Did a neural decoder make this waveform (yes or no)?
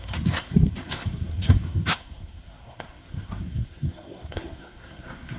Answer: yes